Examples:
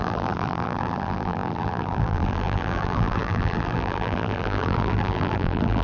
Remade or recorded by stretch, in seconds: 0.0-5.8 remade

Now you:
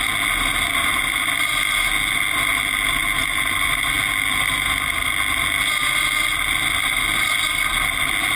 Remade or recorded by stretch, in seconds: 0.0-0.8 recorded; 0.8-1.3 remade; 1.3-3.2 recorded; 3.2-3.9 remade; 3.9-8.4 recorded